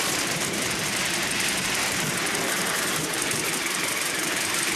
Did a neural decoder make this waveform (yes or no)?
yes